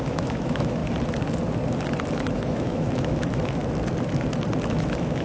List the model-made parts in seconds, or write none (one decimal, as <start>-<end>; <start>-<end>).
0.0-0.8; 2.1-3.6; 4.7-5.2